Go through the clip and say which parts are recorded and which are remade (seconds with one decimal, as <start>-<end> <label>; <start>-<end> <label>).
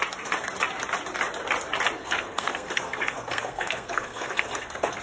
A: 0.0-2.0 recorded; 2.0-5.0 remade